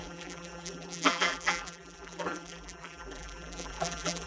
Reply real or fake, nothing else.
fake